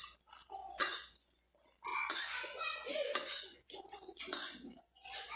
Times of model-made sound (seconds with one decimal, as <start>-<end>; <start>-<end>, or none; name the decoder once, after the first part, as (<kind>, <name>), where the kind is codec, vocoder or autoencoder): 0.6-1.5 (vocoder, Vocos); 1.9-5.4